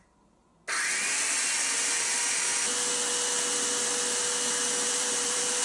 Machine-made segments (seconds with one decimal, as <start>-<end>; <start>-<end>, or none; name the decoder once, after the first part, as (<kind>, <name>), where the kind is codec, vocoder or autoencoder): 0.0-0.5 (vocoder, BigVGAN v2); 1.9-2.5; 4.9-5.6